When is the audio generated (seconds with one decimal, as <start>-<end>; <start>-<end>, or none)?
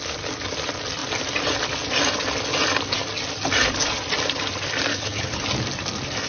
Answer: 4.9-5.4